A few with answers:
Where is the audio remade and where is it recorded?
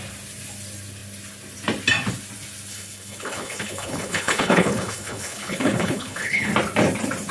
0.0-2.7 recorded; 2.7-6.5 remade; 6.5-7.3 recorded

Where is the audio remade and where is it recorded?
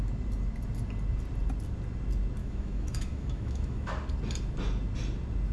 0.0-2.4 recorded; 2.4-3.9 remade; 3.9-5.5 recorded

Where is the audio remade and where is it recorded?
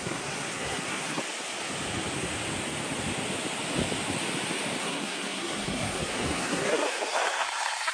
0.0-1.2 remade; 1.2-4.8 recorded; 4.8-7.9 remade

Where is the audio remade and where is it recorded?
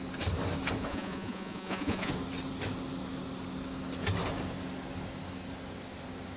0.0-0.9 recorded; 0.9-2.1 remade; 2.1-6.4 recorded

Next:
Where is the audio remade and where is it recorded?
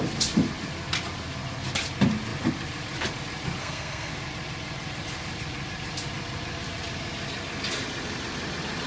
0.0-3.6 recorded; 3.6-4.1 remade; 4.1-8.9 recorded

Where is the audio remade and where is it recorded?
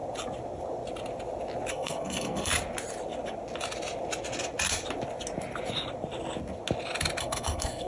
0.0-1.7 recorded; 1.7-2.5 remade; 2.5-7.2 recorded; 7.2-7.9 remade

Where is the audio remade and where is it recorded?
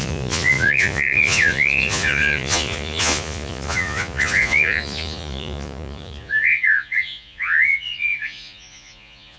0.0-9.4 remade